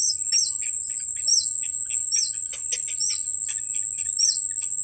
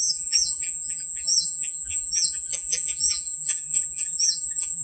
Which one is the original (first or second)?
first